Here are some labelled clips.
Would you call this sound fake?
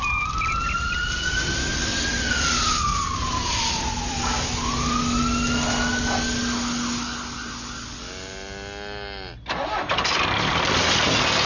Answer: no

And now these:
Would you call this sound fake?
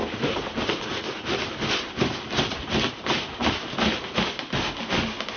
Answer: no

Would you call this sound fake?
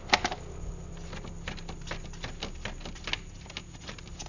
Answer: no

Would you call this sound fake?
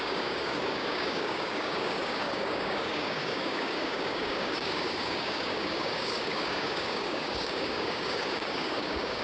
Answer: yes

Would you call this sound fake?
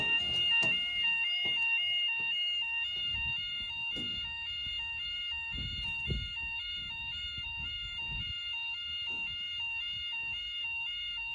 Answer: yes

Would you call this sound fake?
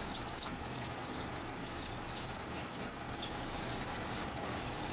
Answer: yes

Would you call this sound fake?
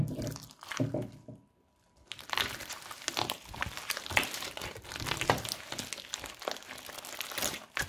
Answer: no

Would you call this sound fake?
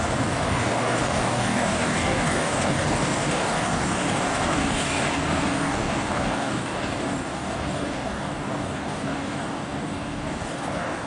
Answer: yes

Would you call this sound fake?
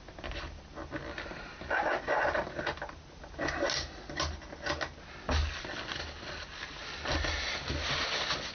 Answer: no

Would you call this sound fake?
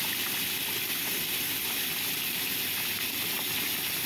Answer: no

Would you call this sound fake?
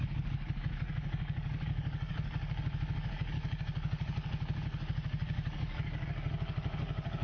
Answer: yes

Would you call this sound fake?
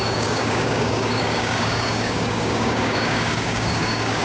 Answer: yes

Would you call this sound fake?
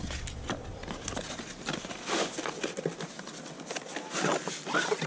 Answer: no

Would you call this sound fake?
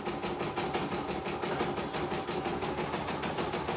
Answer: no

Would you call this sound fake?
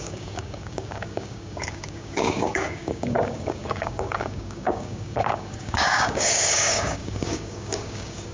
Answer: yes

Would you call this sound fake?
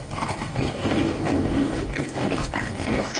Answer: yes